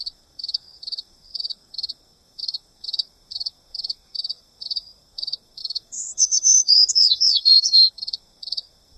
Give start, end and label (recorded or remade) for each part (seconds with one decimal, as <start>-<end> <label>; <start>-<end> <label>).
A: 0.0-9.0 remade